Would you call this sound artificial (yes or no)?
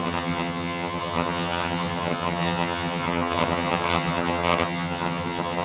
yes